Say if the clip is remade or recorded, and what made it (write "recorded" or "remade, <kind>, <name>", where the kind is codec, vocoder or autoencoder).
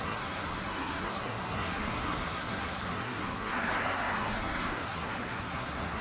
remade, codec, SNAC